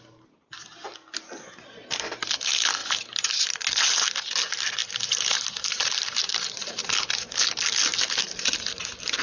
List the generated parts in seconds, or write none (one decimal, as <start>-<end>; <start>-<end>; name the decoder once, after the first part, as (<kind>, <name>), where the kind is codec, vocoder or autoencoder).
4.8-6.2 (vocoder, BigVGAN v2)